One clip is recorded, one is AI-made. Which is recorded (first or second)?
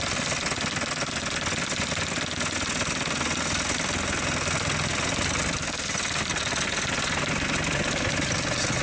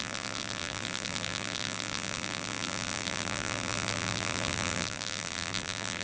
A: first